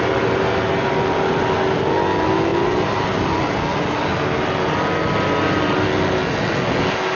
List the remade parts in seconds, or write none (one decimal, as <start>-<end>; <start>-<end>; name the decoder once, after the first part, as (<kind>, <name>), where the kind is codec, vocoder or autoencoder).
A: none